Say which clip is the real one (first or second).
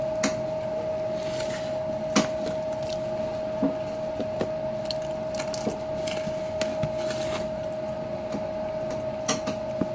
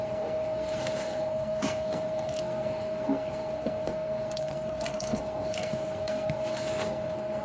first